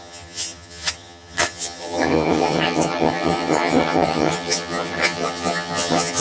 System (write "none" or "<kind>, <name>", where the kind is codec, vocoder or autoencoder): vocoder, HiFi-GAN